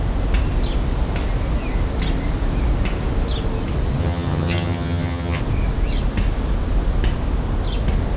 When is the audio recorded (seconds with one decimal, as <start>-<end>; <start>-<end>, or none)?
0.0-4.0; 5.4-8.2